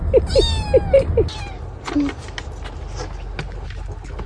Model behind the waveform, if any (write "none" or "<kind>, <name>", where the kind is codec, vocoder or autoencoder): none